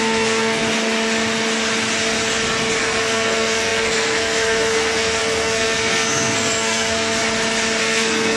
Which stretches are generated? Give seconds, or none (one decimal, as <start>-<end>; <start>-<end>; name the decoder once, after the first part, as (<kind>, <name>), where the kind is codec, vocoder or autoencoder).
0.0-0.6 (codec, SNAC); 2.8-7.2; 7.8-8.4